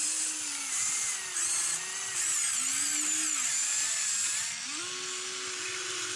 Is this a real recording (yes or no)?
yes